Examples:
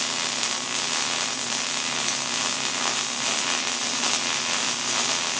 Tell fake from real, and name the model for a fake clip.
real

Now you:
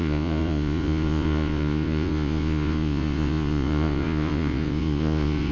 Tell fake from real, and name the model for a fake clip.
fake, vocoder, Vocos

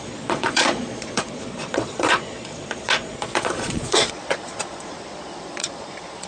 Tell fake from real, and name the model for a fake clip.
fake, vocoder, Vocos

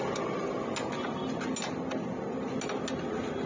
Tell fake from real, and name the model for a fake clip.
real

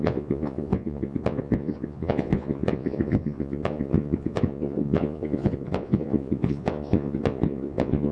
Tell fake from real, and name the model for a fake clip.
fake, vocoder, Vocos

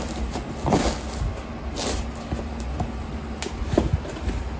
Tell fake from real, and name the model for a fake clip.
real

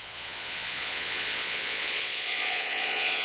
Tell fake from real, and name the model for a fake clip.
fake, vocoder, Vocos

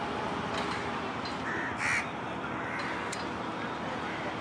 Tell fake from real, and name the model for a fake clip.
real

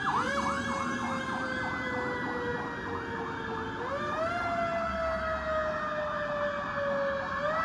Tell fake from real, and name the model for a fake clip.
real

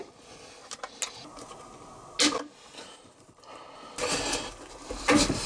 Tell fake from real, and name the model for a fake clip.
real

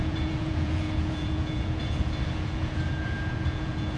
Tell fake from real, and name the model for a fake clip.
fake, vocoder, Vocos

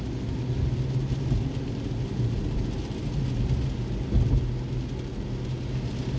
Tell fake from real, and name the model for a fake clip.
real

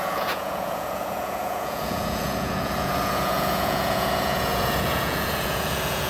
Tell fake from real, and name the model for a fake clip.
fake, vocoder, Vocos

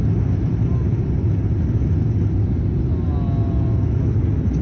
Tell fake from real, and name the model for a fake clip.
real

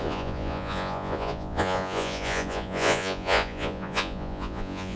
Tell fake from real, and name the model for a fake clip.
fake, vocoder, Vocos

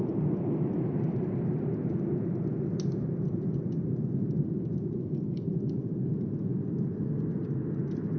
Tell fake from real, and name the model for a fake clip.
real